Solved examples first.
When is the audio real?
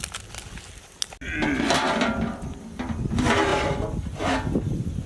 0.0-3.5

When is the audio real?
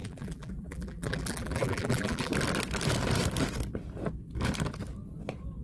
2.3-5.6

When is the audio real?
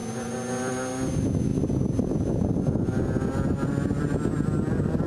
0.0-5.1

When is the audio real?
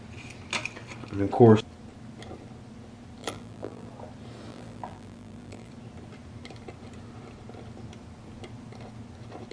0.0-3.2; 3.9-4.5; 5.7-9.5